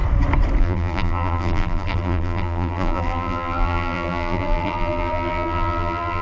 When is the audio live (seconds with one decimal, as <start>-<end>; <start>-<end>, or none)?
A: 0.0-0.6